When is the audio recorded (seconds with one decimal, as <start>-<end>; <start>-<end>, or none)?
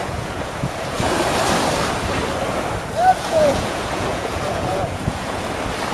1.1-3.1; 5.5-5.9